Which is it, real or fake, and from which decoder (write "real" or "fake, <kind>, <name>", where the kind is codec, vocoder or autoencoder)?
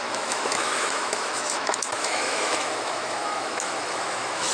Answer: fake, autoencoder, DAC-VAE